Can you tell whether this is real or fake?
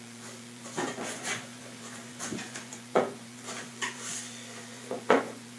fake